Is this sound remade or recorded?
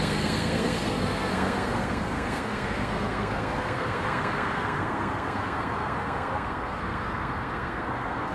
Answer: remade